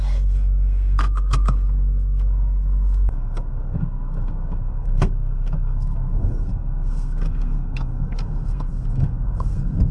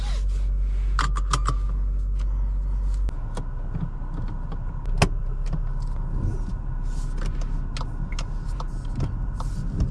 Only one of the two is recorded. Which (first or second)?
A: second